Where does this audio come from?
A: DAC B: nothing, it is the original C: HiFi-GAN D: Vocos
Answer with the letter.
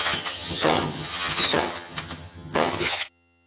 C